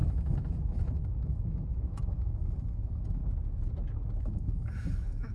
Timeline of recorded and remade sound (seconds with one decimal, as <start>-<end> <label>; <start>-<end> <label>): 0.0-3.2 remade; 3.2-4.2 recorded; 4.2-5.3 remade